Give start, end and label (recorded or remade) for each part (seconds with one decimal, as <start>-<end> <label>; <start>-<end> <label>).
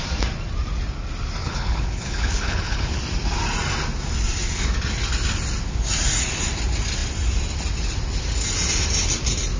0.0-1.4 recorded; 1.4-3.0 remade; 3.0-9.6 recorded